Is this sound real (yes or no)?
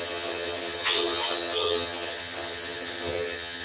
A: no